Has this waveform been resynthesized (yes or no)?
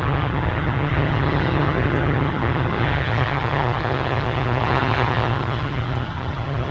yes